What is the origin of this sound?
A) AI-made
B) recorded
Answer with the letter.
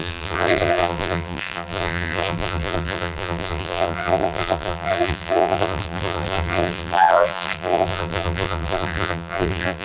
A